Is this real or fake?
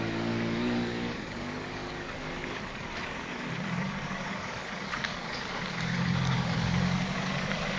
fake